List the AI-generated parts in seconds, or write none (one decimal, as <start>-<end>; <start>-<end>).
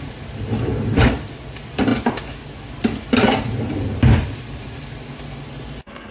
none